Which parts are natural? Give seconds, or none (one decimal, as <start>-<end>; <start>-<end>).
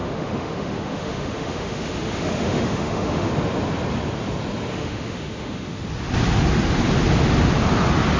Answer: 3.3-4.7; 5.8-8.2